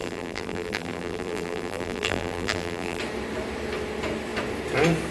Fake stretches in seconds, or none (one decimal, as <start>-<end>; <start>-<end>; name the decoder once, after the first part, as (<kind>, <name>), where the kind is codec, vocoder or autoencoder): 0.0-3.0 (vocoder, BigVGAN v2)